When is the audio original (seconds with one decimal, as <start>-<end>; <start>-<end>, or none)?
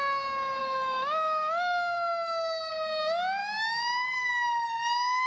0.0-0.6; 2.7-3.4; 4.3-5.3